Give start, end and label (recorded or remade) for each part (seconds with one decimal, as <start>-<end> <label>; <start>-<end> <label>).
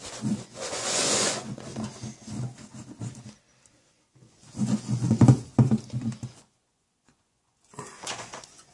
0.0-1.7 remade; 1.7-3.7 recorded; 3.7-5.5 remade; 5.5-6.3 recorded; 6.3-8.7 remade